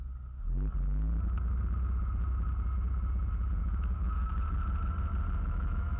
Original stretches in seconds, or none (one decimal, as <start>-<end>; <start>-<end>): 0.0-3.6; 4.3-5.4